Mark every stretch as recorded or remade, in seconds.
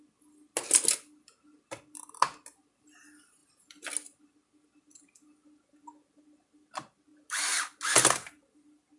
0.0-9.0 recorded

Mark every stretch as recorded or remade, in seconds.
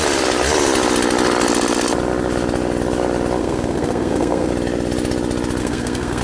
0.0-3.4 recorded; 3.4-4.5 remade; 4.5-5.6 recorded; 5.6-6.2 remade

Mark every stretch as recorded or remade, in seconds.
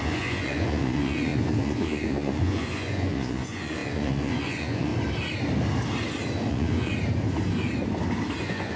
0.0-4.9 remade; 4.9-6.5 recorded; 6.5-6.9 remade; 6.9-8.4 recorded; 8.4-8.8 remade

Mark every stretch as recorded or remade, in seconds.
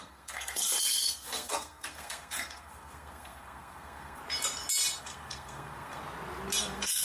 0.0-4.2 remade; 4.2-5.0 recorded; 5.0-6.0 remade; 6.0-6.6 recorded; 6.6-7.0 remade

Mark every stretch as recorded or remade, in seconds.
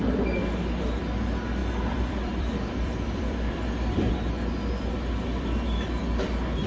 0.0-1.6 recorded; 1.6-4.1 remade; 4.1-6.7 recorded